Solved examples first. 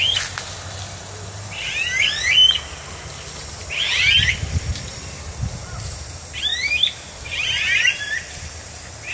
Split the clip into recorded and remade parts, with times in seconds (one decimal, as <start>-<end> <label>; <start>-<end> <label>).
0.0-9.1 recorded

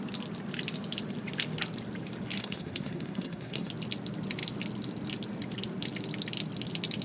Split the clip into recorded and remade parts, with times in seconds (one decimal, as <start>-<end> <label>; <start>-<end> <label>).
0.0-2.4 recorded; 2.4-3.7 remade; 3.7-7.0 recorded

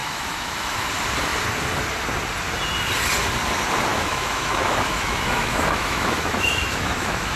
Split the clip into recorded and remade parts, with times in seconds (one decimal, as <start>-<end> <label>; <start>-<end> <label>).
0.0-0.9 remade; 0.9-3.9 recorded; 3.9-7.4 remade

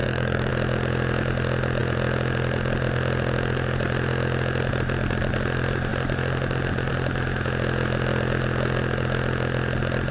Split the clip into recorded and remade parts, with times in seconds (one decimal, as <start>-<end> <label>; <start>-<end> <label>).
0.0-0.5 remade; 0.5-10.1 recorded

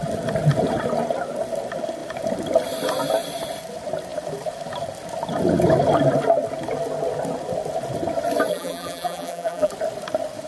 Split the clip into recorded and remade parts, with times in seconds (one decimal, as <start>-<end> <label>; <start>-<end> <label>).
0.0-8.5 recorded; 8.5-9.7 remade; 9.7-10.5 recorded